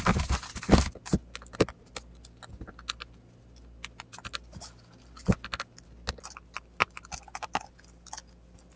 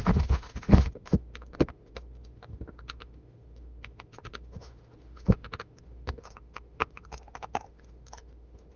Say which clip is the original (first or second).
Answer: first